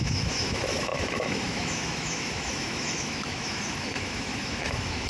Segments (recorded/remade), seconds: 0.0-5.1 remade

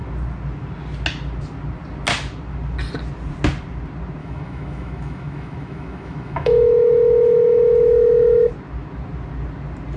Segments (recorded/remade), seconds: 0.0-4.2 recorded; 4.2-8.5 remade; 8.5-10.0 recorded

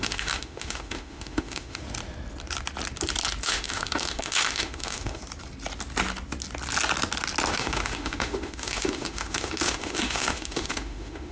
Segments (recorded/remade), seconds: 0.0-1.8 remade; 1.8-3.4 recorded; 3.4-5.2 remade; 5.2-7.5 recorded; 7.5-11.3 remade

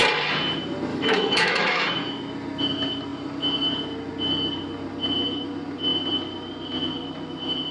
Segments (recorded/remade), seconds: 0.0-0.9 recorded; 0.9-1.9 remade; 1.9-7.7 recorded

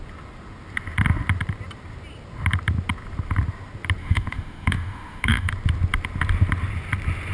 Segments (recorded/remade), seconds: 0.0-4.0 recorded; 4.0-5.5 remade; 5.5-7.3 recorded

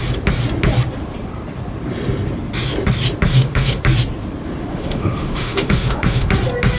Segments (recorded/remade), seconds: 0.0-3.3 recorded; 3.3-3.8 remade; 3.8-4.7 recorded; 4.7-6.3 remade; 6.3-6.8 recorded

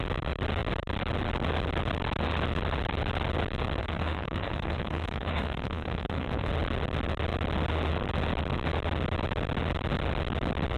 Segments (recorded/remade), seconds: 0.0-3.8 recorded; 3.8-6.5 remade; 6.5-10.8 recorded

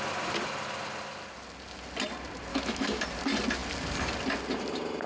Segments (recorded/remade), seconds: 0.0-2.5 recorded; 2.5-3.0 remade; 3.0-5.1 recorded